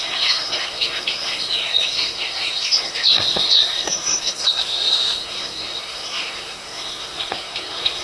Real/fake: fake